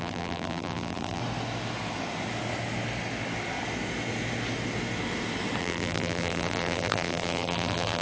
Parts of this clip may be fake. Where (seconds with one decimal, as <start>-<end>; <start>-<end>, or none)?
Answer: 0.0-1.2; 5.6-8.0